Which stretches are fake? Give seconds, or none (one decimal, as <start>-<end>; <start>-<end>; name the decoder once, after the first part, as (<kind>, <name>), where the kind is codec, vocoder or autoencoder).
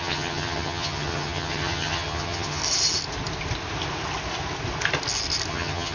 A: 0.0-2.6 (vocoder, HiFi-GAN); 5.5-5.9